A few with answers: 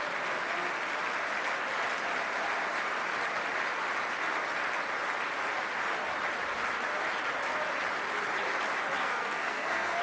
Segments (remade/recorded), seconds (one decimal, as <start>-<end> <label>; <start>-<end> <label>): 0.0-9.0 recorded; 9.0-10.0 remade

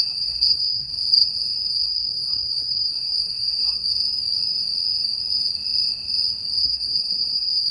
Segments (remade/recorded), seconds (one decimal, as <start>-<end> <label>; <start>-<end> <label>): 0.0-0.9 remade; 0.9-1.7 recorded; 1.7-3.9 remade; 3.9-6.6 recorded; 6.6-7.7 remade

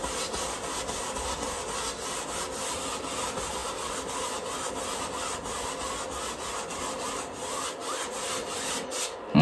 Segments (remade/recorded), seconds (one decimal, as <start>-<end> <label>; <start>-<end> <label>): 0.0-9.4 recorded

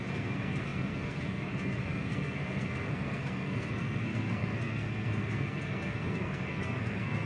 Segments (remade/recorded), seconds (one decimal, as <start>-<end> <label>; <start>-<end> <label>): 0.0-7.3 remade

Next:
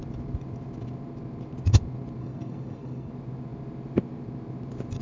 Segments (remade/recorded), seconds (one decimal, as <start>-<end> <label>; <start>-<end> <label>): 0.0-2.2 recorded; 2.2-3.1 remade; 3.1-5.0 recorded